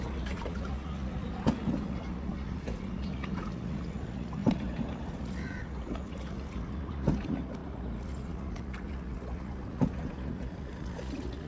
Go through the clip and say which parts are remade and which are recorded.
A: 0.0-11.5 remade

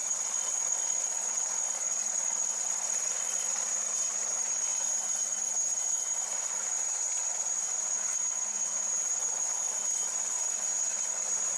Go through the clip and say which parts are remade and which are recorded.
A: 0.0-3.7 remade; 3.7-11.6 recorded

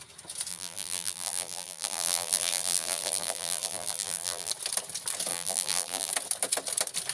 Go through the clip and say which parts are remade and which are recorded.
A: 0.0-0.5 recorded; 0.5-4.5 remade; 4.5-5.3 recorded; 5.3-6.1 remade; 6.1-7.1 recorded